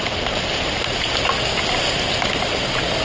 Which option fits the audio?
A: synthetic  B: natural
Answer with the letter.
B